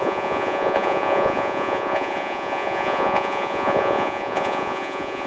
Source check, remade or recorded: remade